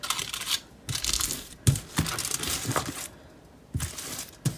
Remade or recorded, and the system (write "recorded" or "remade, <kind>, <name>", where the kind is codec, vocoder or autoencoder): recorded